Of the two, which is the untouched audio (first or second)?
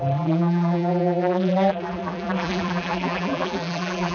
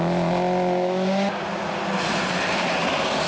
second